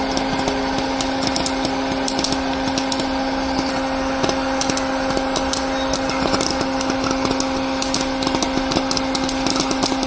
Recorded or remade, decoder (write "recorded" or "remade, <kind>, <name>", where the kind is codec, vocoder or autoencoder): recorded